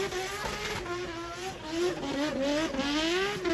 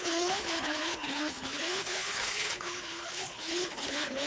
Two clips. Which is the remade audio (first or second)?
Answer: second